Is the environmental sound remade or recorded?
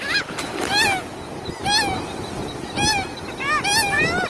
recorded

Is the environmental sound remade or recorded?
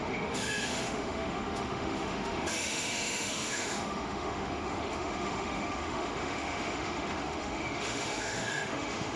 remade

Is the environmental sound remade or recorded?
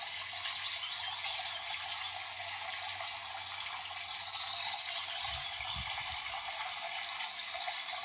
recorded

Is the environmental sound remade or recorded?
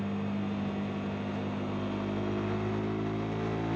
recorded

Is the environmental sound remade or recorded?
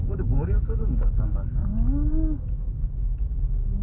remade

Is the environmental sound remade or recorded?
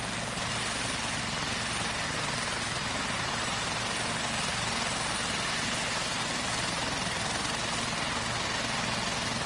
recorded